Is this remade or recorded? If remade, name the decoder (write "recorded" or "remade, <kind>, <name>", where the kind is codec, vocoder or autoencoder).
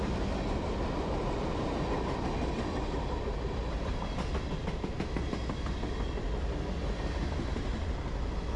recorded